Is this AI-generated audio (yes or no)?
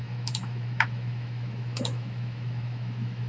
yes